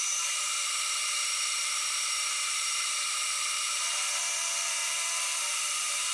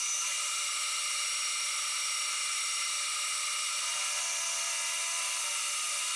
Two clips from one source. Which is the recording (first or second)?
second